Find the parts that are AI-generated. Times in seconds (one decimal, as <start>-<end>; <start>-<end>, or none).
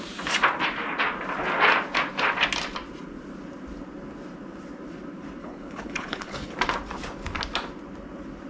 5.4-6.5